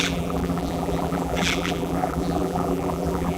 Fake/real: fake